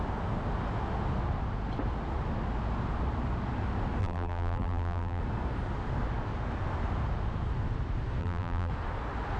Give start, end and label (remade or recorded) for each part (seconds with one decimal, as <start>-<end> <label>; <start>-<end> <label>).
0.0-4.0 recorded; 4.0-5.2 remade; 5.2-8.2 recorded; 8.2-8.7 remade; 8.7-9.4 recorded